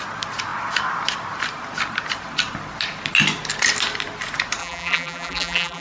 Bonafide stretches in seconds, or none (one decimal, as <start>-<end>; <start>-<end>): 0.0-4.6